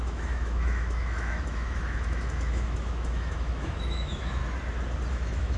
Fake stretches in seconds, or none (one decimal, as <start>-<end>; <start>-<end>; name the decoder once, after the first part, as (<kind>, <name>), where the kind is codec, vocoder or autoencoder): 0.0-4.4 (autoencoder, DAC-VAE); 5.1-5.6